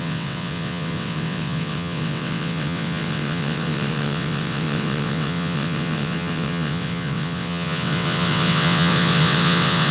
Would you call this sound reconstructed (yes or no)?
yes